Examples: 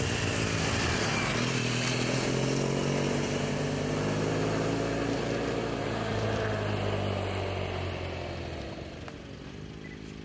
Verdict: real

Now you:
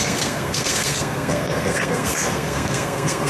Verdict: fake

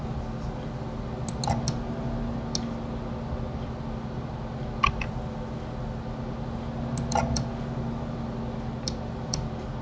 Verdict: real